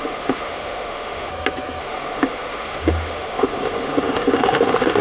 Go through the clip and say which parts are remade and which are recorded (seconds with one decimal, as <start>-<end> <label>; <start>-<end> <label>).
0.0-1.3 remade; 1.3-1.8 recorded; 1.8-5.0 remade